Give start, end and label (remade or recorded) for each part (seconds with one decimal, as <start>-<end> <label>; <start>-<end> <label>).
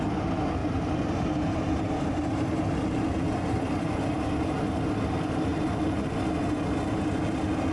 0.0-0.6 recorded; 0.6-2.6 remade; 2.6-7.7 recorded